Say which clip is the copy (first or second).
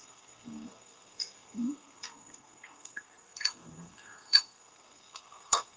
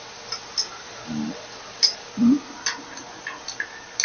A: first